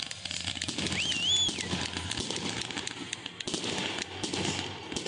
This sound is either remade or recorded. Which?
recorded